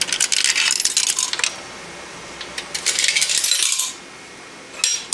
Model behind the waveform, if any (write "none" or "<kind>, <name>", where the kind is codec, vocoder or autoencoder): none